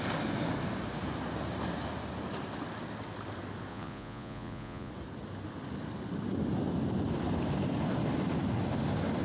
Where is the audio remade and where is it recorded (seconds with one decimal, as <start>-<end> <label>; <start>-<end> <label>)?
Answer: 0.0-3.7 recorded; 3.7-4.9 remade; 4.9-9.2 recorded